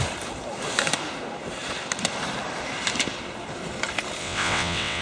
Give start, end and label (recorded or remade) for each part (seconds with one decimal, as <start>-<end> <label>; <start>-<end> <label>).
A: 0.0-4.2 recorded; 4.2-5.0 remade